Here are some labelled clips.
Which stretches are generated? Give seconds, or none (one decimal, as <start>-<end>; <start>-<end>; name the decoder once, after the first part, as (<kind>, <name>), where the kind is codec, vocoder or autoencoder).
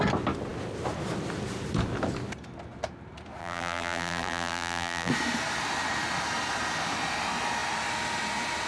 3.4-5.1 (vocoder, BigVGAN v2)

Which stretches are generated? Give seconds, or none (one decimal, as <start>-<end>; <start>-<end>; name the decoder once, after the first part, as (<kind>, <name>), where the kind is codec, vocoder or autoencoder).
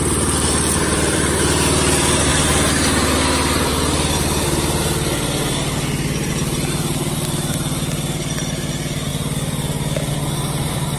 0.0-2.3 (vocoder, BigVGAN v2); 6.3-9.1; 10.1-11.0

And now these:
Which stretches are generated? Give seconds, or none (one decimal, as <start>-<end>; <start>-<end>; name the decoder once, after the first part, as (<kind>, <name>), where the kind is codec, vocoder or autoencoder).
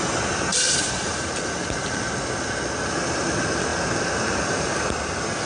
0.5-2.0 (vocoder, BigVGAN v2)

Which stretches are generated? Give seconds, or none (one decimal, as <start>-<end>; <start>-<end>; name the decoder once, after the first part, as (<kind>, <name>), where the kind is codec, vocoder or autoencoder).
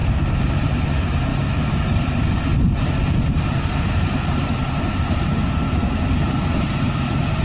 0.0-7.4 (vocoder, BigVGAN v2)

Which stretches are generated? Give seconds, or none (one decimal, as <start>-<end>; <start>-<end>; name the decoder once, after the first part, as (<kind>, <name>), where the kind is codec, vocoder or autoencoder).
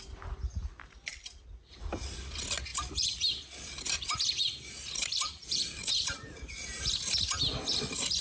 2.7-6.5 (vocoder, BigVGAN v2)